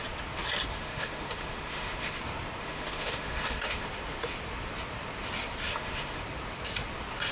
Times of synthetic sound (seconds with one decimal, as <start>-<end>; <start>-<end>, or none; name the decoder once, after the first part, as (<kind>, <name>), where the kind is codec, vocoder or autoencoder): 0.7-2.2 (autoencoder, DAC-VAE); 2.6-3.9; 5.7-6.2